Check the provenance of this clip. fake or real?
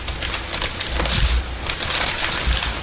real